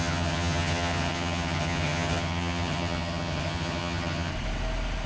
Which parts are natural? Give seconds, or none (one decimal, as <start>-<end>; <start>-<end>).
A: 4.3-5.1